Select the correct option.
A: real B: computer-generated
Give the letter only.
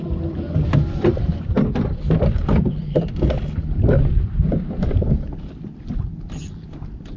A